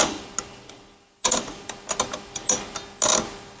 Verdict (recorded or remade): recorded